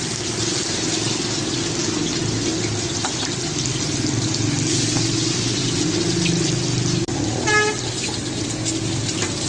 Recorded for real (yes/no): yes